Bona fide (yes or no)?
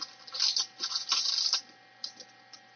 yes